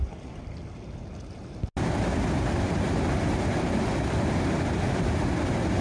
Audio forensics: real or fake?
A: real